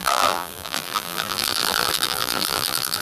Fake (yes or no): yes